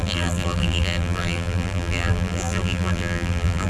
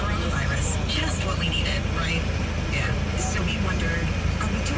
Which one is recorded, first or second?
second